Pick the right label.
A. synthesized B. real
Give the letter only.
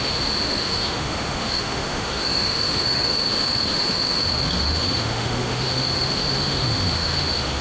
A